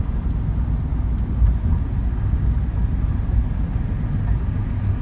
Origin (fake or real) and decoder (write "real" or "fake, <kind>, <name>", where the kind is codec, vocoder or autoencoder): real